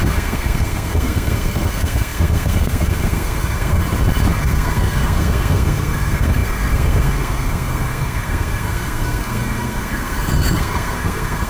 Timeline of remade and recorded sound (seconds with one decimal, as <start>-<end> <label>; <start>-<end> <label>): 0.0-3.8 remade; 3.8-4.4 recorded; 4.4-11.5 remade